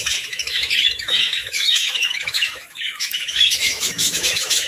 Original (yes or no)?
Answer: no